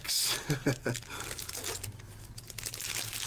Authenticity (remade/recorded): recorded